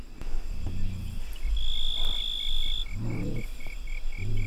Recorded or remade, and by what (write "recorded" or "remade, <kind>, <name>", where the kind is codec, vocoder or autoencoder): recorded